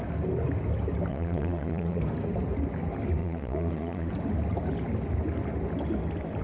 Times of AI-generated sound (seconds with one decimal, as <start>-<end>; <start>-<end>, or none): 1.1-2.0; 3.2-4.1